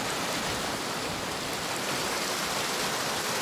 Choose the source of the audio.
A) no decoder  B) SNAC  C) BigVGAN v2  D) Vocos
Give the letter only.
A